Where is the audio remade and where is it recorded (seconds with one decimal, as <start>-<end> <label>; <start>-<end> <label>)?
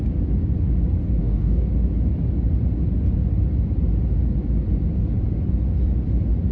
0.0-1.2 recorded; 1.2-1.7 remade; 1.7-6.5 recorded